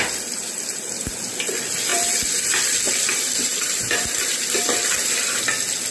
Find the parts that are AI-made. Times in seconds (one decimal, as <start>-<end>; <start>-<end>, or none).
1.9-5.4

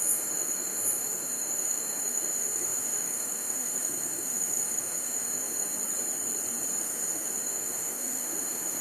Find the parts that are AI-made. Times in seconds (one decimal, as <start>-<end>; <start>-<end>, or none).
0.0-5.7; 6.8-8.8

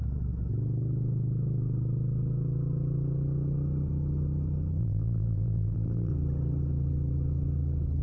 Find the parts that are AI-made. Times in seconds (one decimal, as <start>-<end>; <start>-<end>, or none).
4.8-6.1

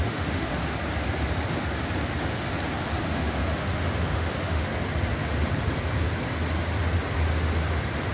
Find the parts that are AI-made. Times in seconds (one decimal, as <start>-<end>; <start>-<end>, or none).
0.0-0.6; 3.0-4.7

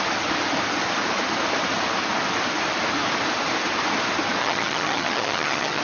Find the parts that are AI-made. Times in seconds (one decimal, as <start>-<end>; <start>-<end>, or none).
4.4-5.8

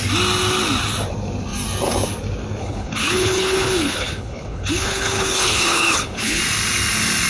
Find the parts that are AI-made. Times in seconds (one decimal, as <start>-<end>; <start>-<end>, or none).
2.6-6.4

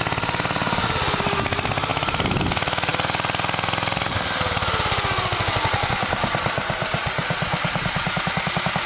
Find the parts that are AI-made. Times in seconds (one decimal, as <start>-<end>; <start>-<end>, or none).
1.9-2.4